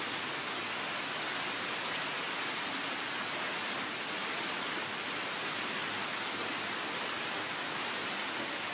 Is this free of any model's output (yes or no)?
yes